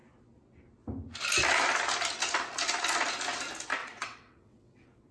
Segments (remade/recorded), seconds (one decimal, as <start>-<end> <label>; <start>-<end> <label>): 0.0-3.8 recorded; 3.8-5.1 remade